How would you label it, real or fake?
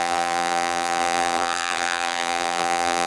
fake